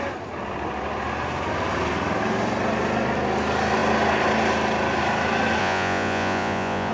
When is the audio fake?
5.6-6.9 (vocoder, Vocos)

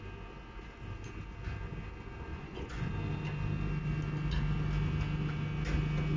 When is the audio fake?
2.3-2.9 (vocoder, Vocos)

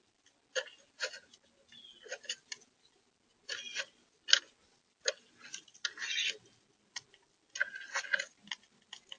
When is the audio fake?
none

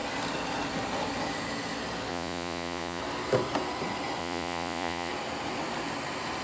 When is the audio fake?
2.1-3.0 (vocoder, Vocos); 4.2-5.1

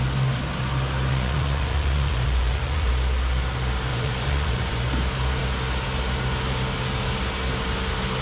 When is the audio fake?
1.1-2.9 (vocoder, Vocos); 3.9-4.9

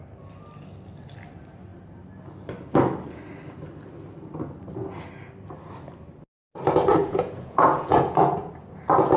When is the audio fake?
6.9-8.5 (vocoder, Vocos)

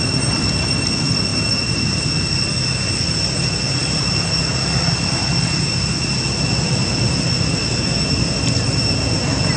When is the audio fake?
none